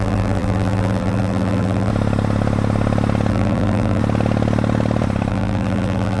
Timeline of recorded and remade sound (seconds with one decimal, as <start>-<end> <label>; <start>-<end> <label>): 0.0-1.9 remade; 1.9-3.3 recorded; 3.3-4.0 remade; 4.0-5.3 recorded; 5.3-6.2 remade